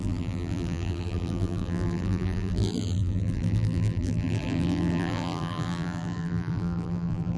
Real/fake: fake